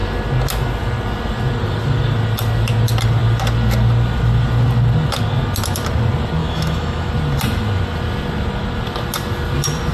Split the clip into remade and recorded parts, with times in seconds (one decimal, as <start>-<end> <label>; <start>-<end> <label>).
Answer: 0.0-6.4 recorded; 6.4-7.1 remade; 7.1-9.9 recorded